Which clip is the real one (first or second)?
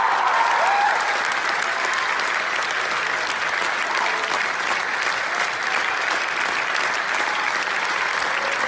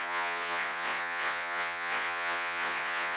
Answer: first